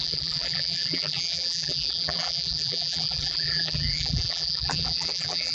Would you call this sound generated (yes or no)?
yes